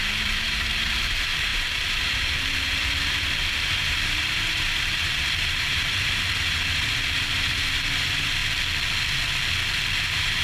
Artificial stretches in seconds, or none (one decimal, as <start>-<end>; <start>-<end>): 0.0-8.4; 10.0-10.4